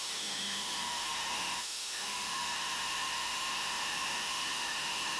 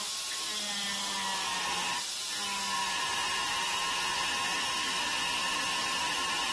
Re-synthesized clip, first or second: first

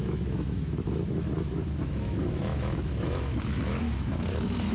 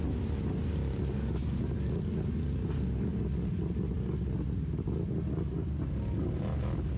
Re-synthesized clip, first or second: first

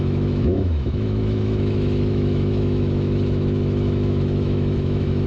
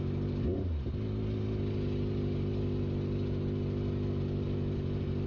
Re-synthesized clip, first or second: first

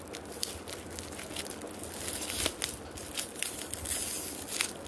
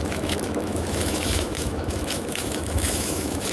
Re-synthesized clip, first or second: second